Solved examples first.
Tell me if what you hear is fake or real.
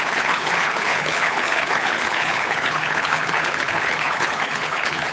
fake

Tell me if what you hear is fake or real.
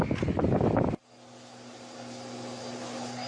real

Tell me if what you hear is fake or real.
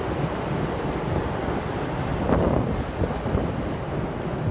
real